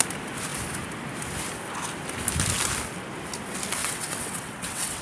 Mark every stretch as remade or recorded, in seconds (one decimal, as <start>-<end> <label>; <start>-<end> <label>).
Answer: 0.0-3.8 recorded; 3.8-5.0 remade